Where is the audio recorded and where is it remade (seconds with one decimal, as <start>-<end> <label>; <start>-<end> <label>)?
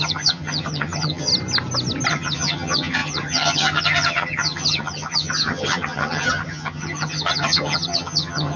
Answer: 0.0-1.3 remade; 1.3-2.1 recorded; 2.1-8.6 remade